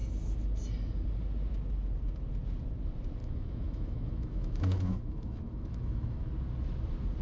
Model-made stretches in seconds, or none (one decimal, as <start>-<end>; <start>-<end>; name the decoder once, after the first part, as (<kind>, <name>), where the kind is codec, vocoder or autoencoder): 3.2-6.3 (autoencoder, DAC-VAE)